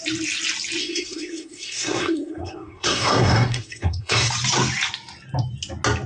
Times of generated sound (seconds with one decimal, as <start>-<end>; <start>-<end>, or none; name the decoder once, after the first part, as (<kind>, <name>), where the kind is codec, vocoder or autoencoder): 0.8-4.3 (codec, SNAC)